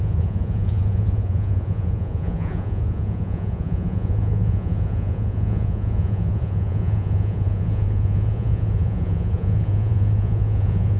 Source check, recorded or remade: remade